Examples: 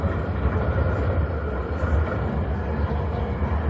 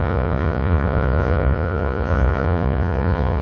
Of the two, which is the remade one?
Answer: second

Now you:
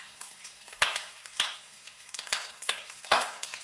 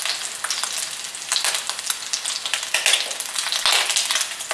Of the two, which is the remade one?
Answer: first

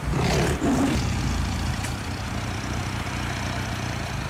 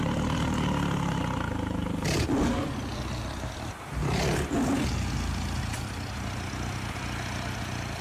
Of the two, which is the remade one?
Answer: first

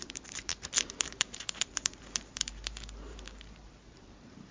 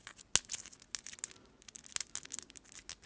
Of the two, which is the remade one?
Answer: first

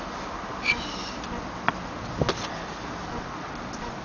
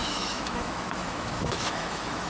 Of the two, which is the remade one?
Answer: second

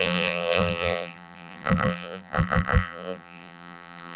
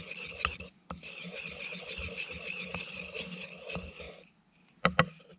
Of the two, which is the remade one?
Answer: first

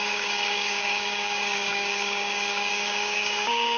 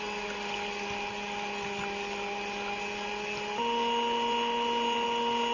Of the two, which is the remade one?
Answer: first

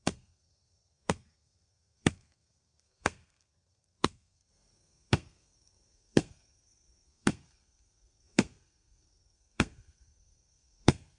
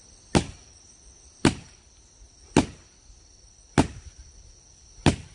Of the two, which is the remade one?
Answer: first